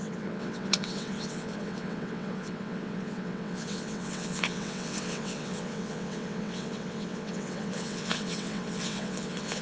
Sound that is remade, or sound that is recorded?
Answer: remade